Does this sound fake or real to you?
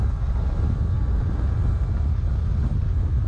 real